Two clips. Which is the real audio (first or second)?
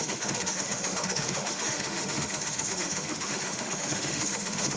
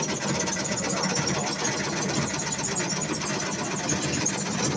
second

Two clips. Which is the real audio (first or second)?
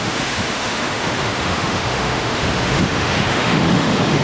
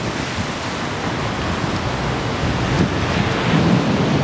second